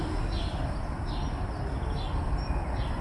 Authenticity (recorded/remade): recorded